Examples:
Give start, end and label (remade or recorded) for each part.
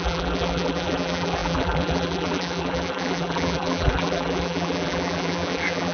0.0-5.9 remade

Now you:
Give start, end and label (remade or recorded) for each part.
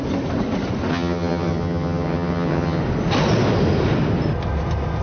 0.0-0.9 recorded; 0.9-2.8 remade; 2.8-5.0 recorded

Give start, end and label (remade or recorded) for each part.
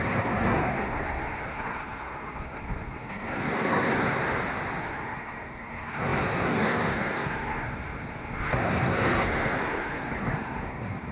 0.0-4.3 remade; 4.3-4.8 recorded; 4.8-11.1 remade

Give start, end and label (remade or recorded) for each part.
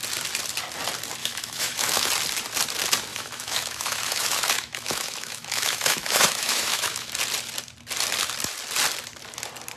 0.0-1.2 recorded; 1.2-2.1 remade; 2.1-3.1 recorded; 3.1-7.1 remade; 7.1-9.8 recorded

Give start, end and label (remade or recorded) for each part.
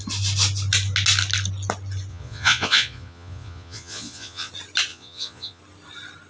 0.0-2.1 recorded; 2.1-4.5 remade; 4.5-4.9 recorded; 4.9-5.6 remade; 5.6-6.3 recorded